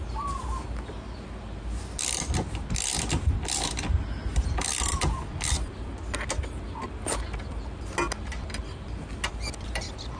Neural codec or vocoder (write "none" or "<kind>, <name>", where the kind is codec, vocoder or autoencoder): none